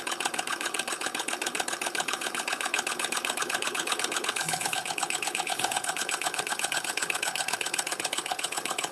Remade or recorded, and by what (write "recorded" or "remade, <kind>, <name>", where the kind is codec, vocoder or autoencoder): remade, codec, HILCodec